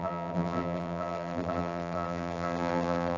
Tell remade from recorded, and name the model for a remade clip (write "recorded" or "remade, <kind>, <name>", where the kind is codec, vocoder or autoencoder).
remade, vocoder, BigVGAN v2